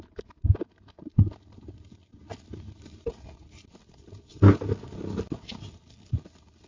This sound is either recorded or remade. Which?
recorded